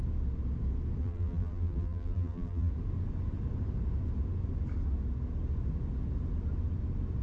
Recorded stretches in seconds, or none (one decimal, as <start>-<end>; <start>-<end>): 0.0-1.0; 2.7-7.2